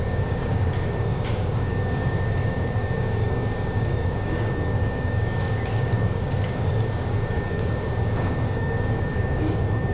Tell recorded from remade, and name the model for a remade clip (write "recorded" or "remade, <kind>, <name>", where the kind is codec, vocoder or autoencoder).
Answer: remade, codec, DAC